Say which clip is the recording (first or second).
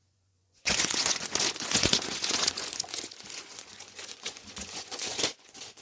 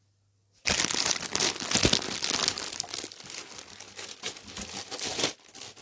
second